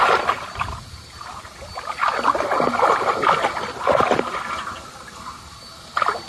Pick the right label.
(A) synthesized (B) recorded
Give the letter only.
B